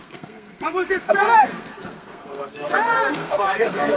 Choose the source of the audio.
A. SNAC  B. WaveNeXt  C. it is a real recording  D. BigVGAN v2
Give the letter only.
A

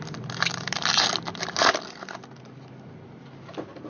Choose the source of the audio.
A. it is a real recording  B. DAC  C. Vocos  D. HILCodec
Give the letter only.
A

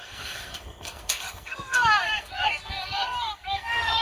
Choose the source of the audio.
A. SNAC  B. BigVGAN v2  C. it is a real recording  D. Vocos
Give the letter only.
A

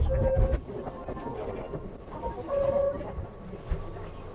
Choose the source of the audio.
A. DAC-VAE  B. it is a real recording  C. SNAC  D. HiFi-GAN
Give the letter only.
B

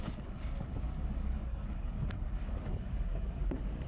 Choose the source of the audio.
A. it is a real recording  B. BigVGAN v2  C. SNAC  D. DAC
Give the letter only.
D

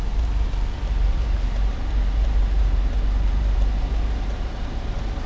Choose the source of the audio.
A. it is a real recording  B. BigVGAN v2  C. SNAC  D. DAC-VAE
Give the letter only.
B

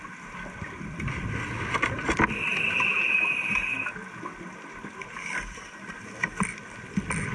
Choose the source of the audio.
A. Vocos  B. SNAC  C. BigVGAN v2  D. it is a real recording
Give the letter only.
D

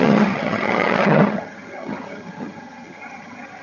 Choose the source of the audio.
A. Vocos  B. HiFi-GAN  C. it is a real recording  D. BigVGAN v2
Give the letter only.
B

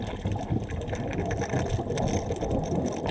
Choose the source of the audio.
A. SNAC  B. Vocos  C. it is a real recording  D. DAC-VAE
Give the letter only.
C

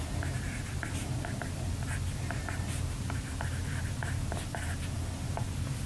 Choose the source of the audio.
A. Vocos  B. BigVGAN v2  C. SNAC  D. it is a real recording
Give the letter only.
B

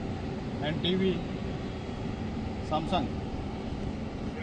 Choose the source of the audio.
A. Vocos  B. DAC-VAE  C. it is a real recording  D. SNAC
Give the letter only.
C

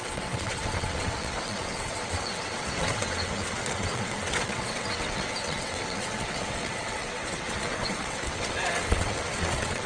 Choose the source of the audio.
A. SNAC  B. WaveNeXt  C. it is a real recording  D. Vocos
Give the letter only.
B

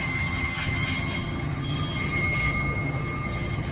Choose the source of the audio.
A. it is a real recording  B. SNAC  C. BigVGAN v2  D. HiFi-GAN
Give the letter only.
D